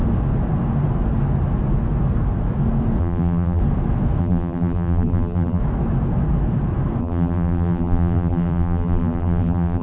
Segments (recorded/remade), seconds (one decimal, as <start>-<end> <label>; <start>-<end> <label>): 0.0-3.0 recorded; 3.0-3.6 remade; 3.6-4.2 recorded; 4.2-5.6 remade; 5.6-7.0 recorded; 7.0-9.8 remade